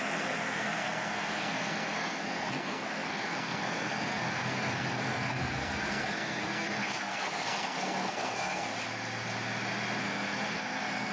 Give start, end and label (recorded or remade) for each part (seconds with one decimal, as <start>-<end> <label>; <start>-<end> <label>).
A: 0.0-8.7 remade; 8.7-10.0 recorded; 10.0-11.1 remade